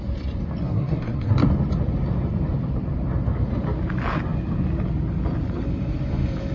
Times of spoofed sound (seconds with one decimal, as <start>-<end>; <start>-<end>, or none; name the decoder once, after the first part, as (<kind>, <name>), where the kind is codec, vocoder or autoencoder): 0.6-1.3 (codec, SNAC)